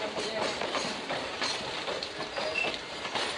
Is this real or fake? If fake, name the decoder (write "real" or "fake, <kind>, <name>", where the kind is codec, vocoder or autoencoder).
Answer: real